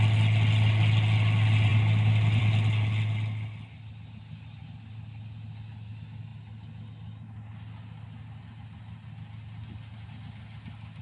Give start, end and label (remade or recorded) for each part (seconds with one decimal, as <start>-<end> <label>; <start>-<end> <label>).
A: 0.0-11.0 recorded